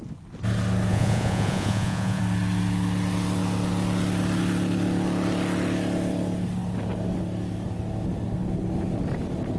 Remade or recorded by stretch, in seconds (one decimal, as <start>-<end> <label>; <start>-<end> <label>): 0.0-0.9 recorded; 0.9-2.2 remade; 2.2-9.6 recorded